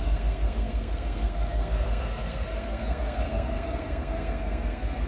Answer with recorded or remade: remade